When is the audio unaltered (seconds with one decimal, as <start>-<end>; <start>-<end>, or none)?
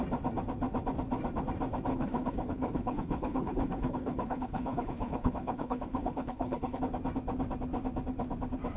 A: 0.0-1.9; 6.8-8.8